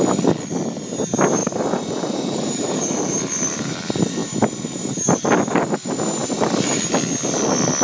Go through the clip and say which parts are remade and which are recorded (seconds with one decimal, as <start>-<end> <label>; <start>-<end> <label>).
0.0-1.4 recorded; 1.4-3.8 remade; 3.8-6.2 recorded; 6.2-6.8 remade; 6.8-7.8 recorded